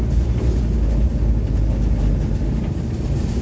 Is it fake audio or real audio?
real